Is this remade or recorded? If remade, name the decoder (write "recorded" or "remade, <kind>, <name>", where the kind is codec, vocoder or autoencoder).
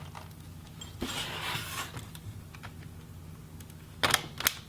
recorded